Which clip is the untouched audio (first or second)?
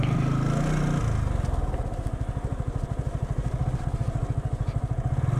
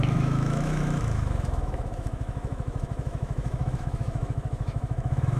first